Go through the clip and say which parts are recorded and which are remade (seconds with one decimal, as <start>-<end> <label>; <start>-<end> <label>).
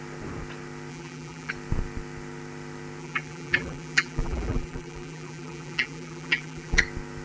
0.0-0.9 recorded; 0.9-1.5 remade; 1.5-3.0 recorded; 3.0-6.8 remade; 6.8-7.2 recorded